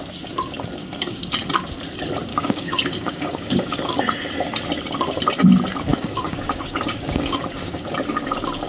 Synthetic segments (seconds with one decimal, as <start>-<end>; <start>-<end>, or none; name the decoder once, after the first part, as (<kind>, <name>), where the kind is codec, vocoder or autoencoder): 0.8-1.3 (codec, DAC); 2.3-4.0; 5.9-7.8